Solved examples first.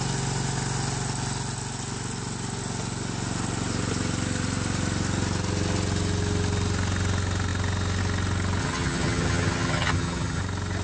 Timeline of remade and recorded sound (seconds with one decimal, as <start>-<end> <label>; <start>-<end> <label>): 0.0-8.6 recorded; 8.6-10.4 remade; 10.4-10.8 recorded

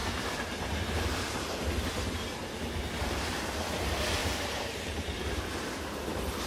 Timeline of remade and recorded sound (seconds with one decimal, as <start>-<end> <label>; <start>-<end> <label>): 0.0-1.6 remade; 1.6-3.0 recorded; 3.0-3.5 remade; 3.5-4.2 recorded; 4.2-4.9 remade; 4.9-6.5 recorded

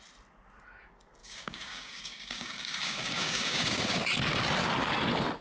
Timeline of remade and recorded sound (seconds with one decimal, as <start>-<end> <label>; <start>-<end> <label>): 0.0-1.2 recorded; 1.2-4.0 remade; 4.0-5.4 recorded

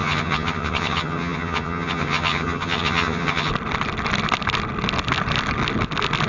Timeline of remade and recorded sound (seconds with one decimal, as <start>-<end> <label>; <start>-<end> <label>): 0.0-3.5 remade; 3.5-6.3 recorded

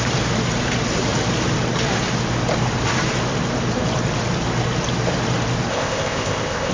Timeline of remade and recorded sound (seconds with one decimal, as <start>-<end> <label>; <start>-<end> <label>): 0.0-5.7 recorded; 5.7-6.7 remade